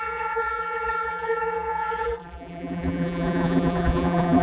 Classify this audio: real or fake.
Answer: fake